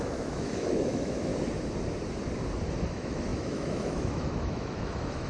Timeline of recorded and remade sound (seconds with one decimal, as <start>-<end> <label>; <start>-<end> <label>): 0.0-1.3 remade; 1.3-2.9 recorded; 2.9-5.3 remade